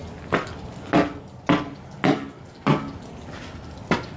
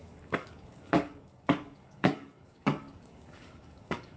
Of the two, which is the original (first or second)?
first